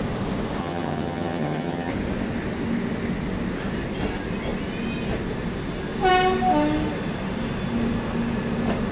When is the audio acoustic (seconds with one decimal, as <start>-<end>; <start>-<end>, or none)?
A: 0.0-0.6; 1.9-8.9